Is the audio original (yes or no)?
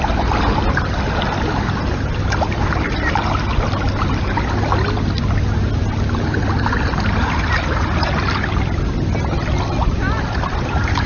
yes